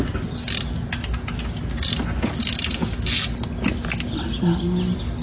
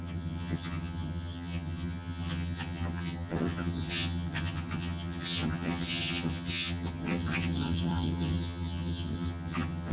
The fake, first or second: second